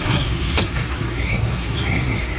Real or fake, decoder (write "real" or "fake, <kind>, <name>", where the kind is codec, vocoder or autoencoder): fake, codec, SNAC